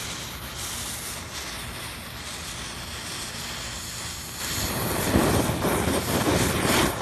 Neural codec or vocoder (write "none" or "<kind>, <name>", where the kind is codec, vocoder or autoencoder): none